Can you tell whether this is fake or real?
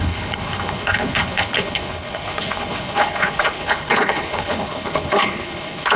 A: fake